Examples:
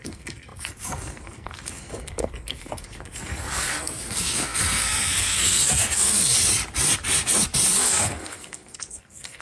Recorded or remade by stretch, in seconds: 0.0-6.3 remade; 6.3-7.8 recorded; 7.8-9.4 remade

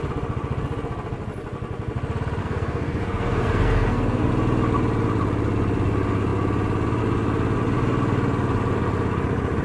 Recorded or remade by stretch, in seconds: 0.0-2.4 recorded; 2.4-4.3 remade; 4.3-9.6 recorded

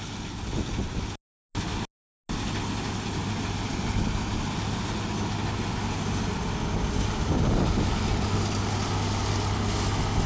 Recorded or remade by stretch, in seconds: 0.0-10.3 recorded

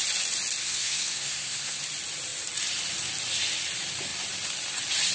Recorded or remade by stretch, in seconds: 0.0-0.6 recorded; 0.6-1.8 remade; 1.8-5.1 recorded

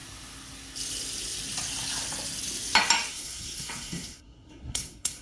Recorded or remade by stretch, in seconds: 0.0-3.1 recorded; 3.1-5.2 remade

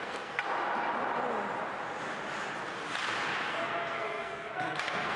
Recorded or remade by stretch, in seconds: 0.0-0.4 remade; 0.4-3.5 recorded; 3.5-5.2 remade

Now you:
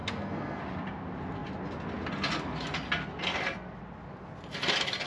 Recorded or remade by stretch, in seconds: 0.0-0.6 remade; 0.6-5.1 recorded